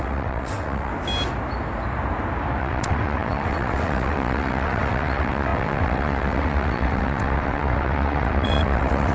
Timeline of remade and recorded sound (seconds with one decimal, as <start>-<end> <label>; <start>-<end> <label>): 0.0-0.9 remade; 0.9-2.6 recorded; 2.6-9.1 remade